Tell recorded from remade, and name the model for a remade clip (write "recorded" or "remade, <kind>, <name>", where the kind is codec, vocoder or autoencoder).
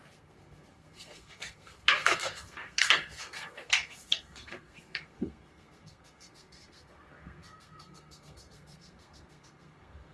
remade, codec, SNAC